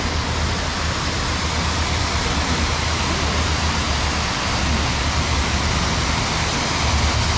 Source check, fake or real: real